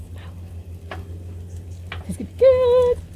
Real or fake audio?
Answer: real